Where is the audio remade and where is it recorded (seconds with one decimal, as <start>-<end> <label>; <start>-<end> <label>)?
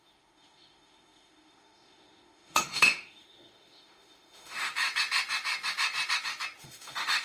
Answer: 0.0-4.7 remade; 4.7-6.6 recorded; 6.6-7.2 remade